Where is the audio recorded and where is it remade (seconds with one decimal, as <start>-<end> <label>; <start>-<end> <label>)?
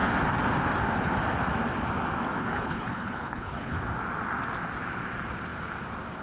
0.0-2.4 recorded; 2.4-3.8 remade; 3.8-6.2 recorded